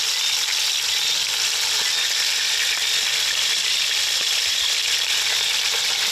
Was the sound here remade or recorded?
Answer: recorded